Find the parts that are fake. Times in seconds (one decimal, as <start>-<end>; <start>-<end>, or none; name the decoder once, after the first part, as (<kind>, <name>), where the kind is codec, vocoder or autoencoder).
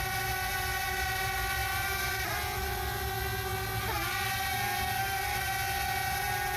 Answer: 1.6-2.1 (vocoder, BigVGAN v2)